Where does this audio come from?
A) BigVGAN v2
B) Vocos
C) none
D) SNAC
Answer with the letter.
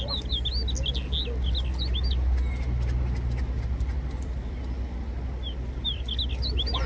C